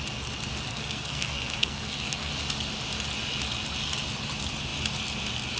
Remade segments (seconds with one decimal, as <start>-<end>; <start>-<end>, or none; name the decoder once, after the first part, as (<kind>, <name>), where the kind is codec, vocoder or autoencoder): 0.7-2.3 (codec, SNAC)